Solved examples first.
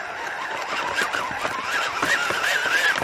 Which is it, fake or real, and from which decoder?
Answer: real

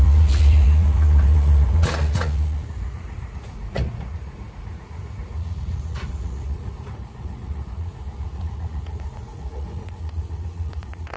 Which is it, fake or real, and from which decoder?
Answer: fake, vocoder, Vocos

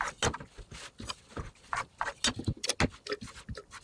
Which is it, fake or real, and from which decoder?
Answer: real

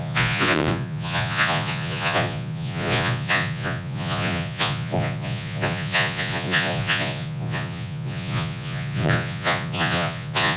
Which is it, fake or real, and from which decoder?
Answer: fake, vocoder, Vocos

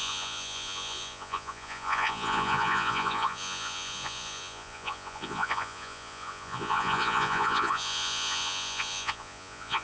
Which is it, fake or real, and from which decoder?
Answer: fake, vocoder, Vocos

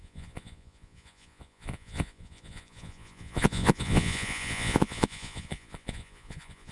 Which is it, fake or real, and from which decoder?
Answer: fake, vocoder, Vocos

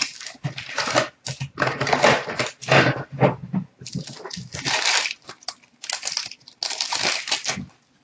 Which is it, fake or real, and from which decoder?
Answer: real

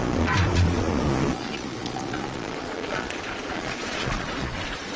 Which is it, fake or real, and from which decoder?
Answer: fake, vocoder, Vocos